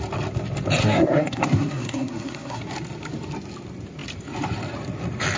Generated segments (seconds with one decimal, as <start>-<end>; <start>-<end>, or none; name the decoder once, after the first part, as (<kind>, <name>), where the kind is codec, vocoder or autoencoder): 0.8-2.6 (codec, SNAC)